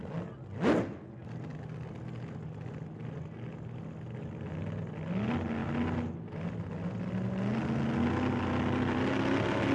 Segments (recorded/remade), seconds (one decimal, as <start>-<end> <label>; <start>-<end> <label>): 0.0-9.7 recorded